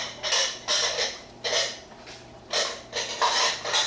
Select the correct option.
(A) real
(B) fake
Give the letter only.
A